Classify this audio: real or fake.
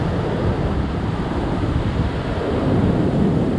fake